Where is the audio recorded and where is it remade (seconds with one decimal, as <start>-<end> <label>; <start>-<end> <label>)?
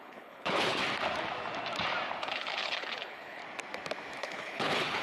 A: 0.0-0.8 remade; 0.8-2.2 recorded; 2.2-3.4 remade; 3.4-4.2 recorded; 4.2-5.0 remade